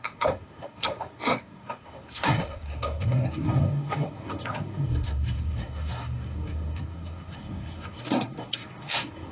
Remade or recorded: remade